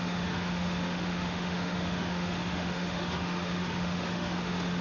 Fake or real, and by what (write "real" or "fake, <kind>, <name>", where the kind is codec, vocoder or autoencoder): fake, autoencoder, DAC-VAE